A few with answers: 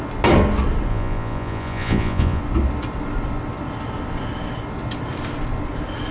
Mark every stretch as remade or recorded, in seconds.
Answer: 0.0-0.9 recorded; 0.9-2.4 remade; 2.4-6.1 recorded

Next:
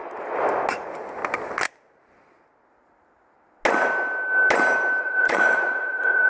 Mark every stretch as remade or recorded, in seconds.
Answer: 0.0-0.7 recorded; 0.7-1.2 remade; 1.2-5.0 recorded; 5.0-6.3 remade

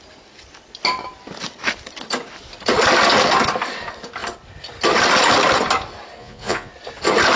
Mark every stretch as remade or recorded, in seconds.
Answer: 0.0-6.2 recorded; 6.2-6.7 remade; 6.7-7.4 recorded

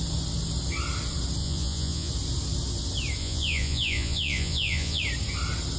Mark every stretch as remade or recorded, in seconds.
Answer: 0.0-1.4 recorded; 1.4-2.1 remade; 2.1-3.2 recorded; 3.2-5.0 remade; 5.0-5.8 recorded